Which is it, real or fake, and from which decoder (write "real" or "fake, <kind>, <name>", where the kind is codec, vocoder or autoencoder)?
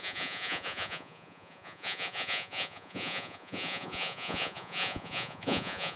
fake, vocoder, Vocos